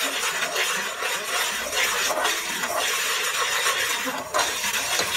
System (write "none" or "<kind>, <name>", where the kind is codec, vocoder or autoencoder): none